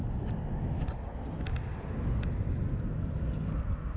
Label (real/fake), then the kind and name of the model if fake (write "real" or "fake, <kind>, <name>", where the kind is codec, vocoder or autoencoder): real